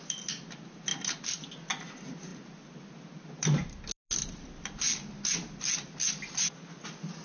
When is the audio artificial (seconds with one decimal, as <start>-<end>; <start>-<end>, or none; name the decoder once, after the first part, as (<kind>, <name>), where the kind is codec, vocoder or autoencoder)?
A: none